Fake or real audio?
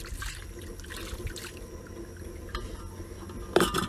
real